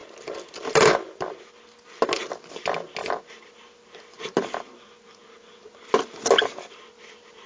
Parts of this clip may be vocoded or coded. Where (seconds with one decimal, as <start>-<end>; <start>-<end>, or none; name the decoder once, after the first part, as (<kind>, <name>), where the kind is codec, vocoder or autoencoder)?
none